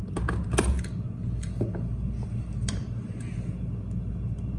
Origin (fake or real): real